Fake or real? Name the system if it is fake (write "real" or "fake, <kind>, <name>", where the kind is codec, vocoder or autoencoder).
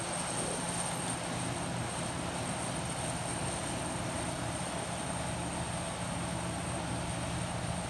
real